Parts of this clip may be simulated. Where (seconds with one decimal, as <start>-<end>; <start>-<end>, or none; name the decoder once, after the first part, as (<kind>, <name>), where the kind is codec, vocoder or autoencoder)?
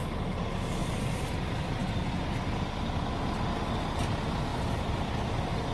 0.8-1.3 (vocoder, BigVGAN v2); 4.5-5.7